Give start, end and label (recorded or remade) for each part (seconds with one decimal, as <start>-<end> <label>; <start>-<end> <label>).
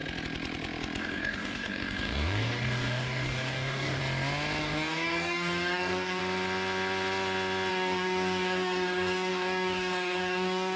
0.0-1.0 recorded; 1.0-4.0 remade; 4.0-4.6 recorded; 4.6-6.2 remade; 6.2-7.7 recorded; 7.7-10.8 remade